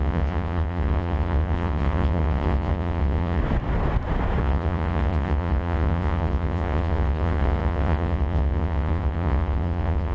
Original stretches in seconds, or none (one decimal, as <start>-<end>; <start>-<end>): 3.4-4.4